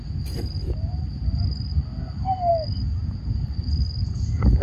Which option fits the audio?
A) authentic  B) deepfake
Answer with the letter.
A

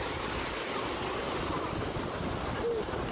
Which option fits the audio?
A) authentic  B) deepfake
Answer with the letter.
A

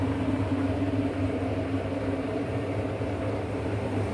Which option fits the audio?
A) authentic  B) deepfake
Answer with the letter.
B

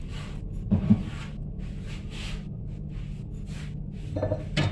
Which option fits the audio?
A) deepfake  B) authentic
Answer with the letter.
B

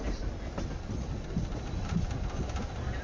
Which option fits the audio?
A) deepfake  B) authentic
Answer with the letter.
B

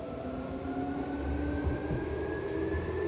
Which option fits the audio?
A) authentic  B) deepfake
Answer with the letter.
A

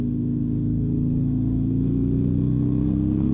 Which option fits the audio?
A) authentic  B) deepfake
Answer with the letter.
B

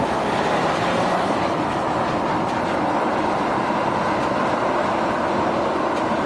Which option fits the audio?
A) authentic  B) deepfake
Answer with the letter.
A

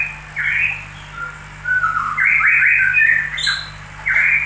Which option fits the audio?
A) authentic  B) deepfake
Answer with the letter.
A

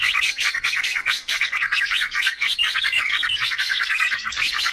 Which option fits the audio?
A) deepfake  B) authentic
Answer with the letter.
A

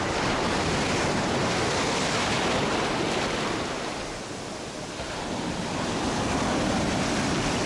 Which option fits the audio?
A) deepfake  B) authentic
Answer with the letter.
B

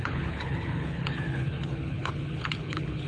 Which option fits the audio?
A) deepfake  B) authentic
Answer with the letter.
A